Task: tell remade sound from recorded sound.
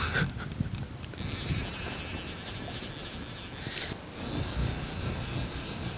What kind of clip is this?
recorded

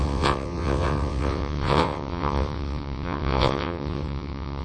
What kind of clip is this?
remade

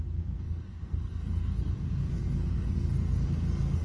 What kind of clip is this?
remade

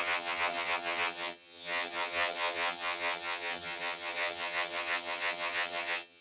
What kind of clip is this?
remade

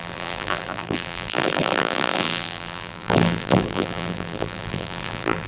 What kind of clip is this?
remade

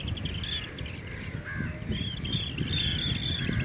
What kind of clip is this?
recorded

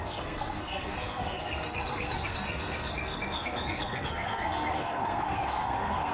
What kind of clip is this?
remade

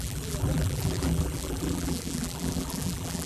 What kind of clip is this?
remade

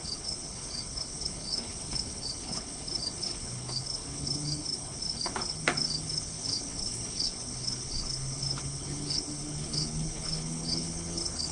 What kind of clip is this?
remade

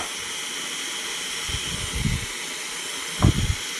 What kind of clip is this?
recorded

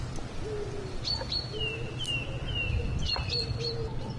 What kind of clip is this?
recorded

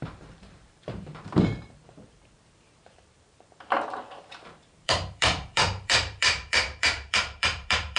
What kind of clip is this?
remade